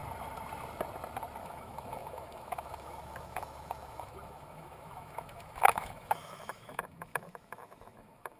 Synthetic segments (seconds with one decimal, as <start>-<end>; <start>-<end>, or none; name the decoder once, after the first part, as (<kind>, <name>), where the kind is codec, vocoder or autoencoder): 1.4-8.4 (autoencoder, DAC-VAE)